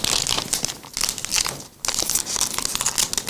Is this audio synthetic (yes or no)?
no